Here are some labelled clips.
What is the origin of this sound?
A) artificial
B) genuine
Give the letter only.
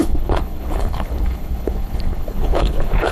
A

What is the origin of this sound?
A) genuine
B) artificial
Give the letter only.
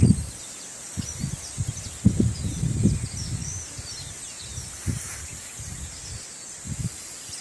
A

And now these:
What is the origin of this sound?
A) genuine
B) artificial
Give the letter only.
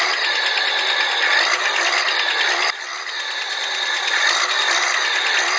A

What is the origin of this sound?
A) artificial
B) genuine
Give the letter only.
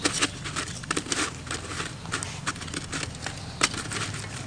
B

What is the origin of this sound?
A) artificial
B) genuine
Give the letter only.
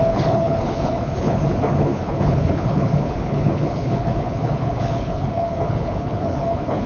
A